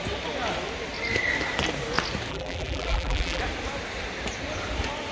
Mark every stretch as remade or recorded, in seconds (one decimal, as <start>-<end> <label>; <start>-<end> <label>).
0.0-2.3 recorded; 2.3-3.4 remade; 3.4-5.1 recorded